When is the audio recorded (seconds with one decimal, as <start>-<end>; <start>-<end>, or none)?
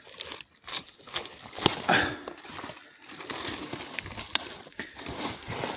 0.0-0.7; 1.7-5.8